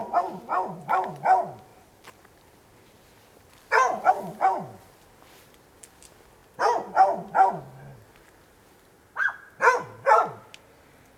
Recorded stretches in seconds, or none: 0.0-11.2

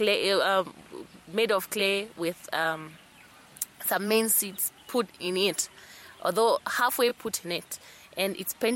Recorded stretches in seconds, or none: 0.0-1.8; 6.2-8.8

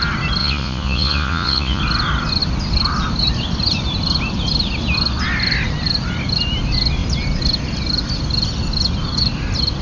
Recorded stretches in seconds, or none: 0.0-0.4; 1.8-9.8